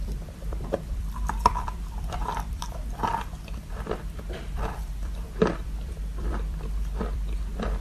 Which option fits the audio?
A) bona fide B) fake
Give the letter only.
B